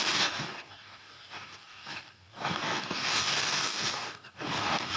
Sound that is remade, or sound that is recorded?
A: remade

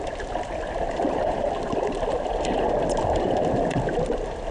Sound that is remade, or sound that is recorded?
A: recorded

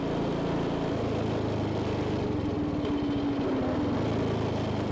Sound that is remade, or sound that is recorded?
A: recorded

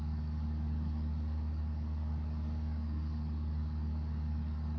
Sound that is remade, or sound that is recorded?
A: remade